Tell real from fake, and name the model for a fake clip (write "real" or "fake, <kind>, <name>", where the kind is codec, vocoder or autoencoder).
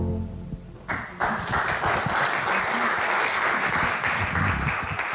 real